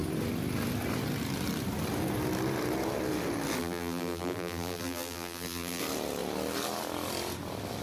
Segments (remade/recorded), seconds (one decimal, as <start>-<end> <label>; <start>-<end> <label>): 0.0-3.6 recorded; 3.6-5.8 remade; 5.8-7.8 recorded